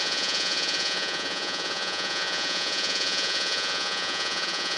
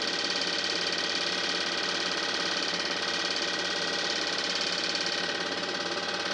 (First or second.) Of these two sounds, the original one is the second